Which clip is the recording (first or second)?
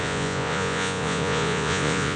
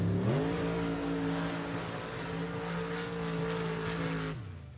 second